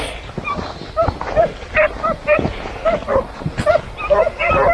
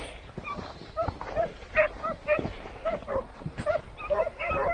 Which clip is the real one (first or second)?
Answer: first